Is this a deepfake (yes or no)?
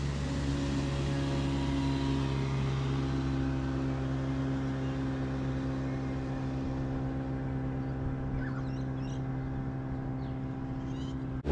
no